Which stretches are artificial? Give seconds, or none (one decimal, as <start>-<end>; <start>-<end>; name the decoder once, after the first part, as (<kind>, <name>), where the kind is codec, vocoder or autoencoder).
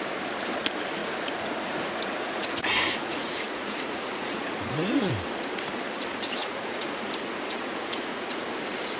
1.0-5.1 (vocoder, Vocos); 6.4-8.4